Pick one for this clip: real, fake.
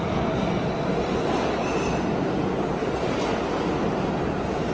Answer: real